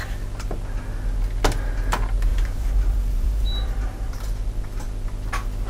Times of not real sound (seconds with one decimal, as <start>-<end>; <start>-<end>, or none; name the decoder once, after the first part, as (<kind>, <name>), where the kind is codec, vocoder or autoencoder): 2.3-4.2 (vocoder, BigVGAN v2)